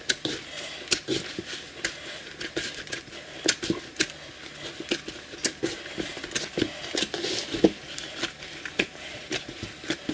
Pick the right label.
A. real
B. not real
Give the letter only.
A